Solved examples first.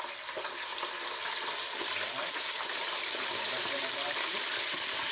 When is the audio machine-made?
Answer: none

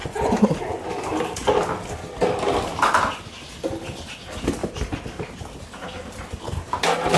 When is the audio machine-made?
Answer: 0.0-0.6 (vocoder, Vocos)

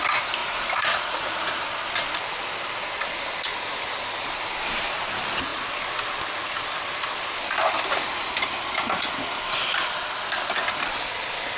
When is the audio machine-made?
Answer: 0.4-1.6 (vocoder, Vocos)

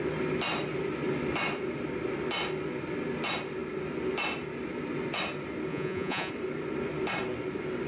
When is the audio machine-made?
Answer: 5.7-6.3 (vocoder, Vocos)